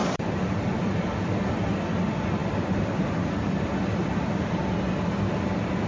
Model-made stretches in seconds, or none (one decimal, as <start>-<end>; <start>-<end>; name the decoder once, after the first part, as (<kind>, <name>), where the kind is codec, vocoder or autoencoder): 0.0-1.5 (vocoder, BigVGAN v2)